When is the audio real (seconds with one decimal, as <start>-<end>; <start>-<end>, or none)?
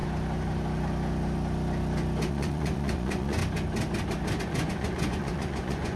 0.0-2.3; 3.4-4.4